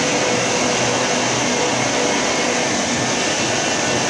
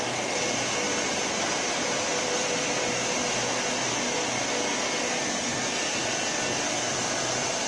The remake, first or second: first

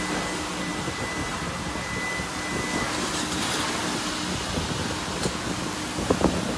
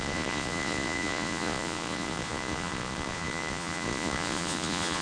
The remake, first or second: second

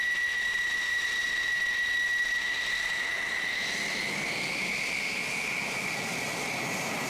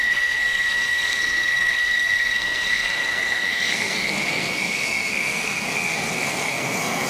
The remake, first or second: second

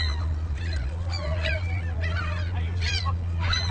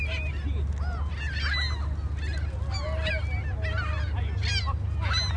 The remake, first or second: first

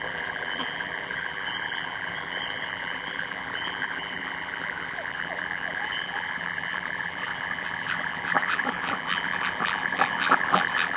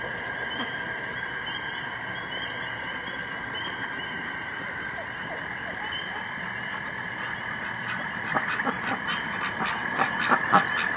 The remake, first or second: first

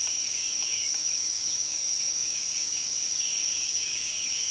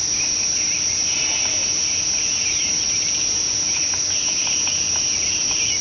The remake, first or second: first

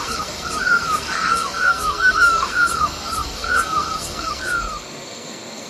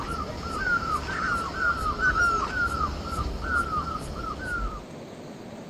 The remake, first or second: first